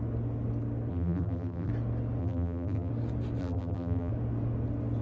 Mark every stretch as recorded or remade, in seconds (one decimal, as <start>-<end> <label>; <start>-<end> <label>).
0.0-0.9 recorded; 0.9-1.7 remade; 1.7-2.2 recorded; 2.2-2.9 remade; 2.9-3.4 recorded; 3.4-4.1 remade; 4.1-5.0 recorded